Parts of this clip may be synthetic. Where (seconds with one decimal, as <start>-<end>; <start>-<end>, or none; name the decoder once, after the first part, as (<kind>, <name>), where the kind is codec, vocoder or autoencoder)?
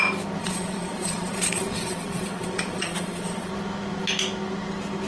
0.4-3.5 (vocoder, Vocos)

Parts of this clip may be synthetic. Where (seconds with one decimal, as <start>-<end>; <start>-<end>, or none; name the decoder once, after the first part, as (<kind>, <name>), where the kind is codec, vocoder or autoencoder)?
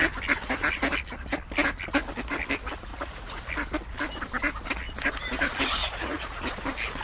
2.9-3.4 (vocoder, Vocos); 5.8-6.4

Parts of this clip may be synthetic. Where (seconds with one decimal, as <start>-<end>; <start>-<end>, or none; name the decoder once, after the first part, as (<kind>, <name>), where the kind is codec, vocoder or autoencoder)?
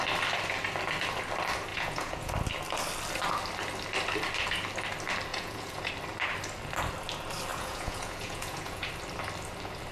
1.7-2.3 (vocoder, Vocos); 5.3-5.9; 7.5-8.9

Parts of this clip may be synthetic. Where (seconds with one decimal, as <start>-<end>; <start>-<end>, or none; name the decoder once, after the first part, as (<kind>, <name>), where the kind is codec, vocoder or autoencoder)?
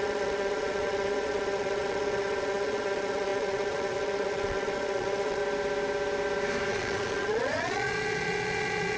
0.0-5.4 (vocoder, Vocos); 6.7-9.0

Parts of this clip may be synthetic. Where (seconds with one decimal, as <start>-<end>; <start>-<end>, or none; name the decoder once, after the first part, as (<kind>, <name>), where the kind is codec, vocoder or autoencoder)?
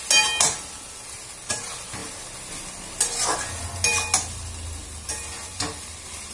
none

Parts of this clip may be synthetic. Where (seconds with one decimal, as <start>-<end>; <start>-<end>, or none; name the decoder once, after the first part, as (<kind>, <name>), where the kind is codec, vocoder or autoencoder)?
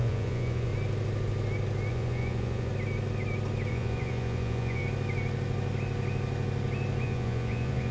0.0-0.7 (vocoder, Vocos); 1.9-2.7; 3.7-4.8; 7.0-7.9